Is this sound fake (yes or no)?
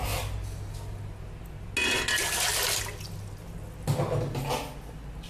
no